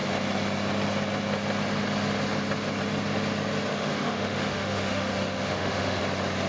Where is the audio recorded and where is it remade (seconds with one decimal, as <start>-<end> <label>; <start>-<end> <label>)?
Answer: 0.0-3.7 recorded; 3.7-6.0 remade; 6.0-6.5 recorded